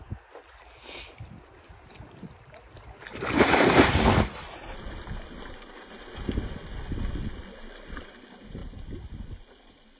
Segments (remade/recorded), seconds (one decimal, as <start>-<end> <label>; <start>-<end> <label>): 0.0-8.6 recorded; 8.6-9.2 remade; 9.2-10.0 recorded